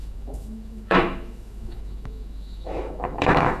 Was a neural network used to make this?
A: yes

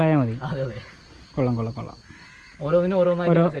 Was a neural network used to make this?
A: no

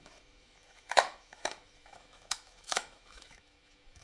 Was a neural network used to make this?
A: yes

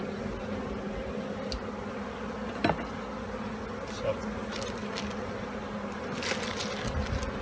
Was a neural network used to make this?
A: no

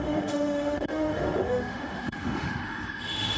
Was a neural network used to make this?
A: yes